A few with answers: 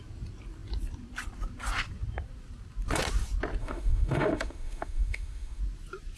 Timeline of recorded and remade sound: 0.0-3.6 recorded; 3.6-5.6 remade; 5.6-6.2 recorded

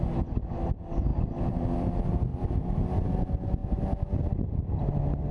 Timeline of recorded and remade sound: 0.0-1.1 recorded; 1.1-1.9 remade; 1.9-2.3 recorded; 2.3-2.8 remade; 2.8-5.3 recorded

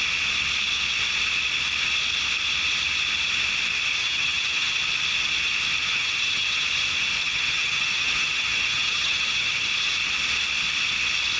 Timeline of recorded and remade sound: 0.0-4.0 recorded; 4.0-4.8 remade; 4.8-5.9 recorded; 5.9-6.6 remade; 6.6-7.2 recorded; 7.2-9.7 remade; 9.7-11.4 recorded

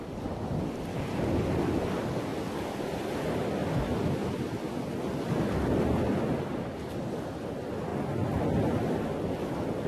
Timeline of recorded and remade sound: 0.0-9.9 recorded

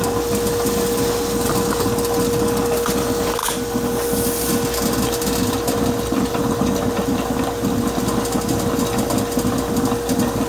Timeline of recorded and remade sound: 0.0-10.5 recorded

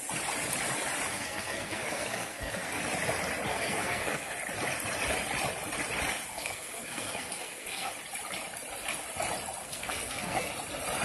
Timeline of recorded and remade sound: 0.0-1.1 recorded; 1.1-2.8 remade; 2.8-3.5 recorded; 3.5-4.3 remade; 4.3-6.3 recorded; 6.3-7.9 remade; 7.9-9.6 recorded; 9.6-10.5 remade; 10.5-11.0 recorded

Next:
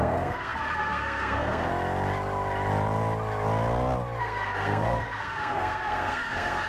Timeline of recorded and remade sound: 0.0-1.7 remade; 1.7-4.2 recorded; 4.2-6.7 remade

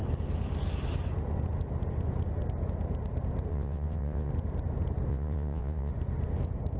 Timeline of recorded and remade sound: 0.0-3.5 recorded; 3.5-4.3 remade; 4.3-5.1 recorded; 5.1-5.9 remade; 5.9-6.8 recorded